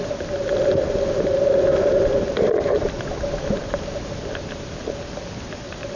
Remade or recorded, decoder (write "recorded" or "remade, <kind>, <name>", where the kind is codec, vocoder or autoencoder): recorded